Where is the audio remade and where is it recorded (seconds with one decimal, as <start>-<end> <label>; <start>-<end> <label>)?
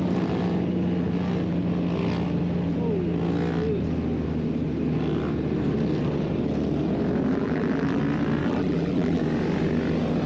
0.0-7.3 recorded; 7.3-8.0 remade; 8.0-8.4 recorded; 8.4-9.2 remade; 9.2-10.3 recorded